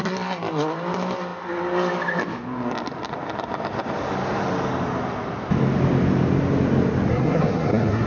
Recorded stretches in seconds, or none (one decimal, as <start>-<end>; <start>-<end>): 0.0-7.1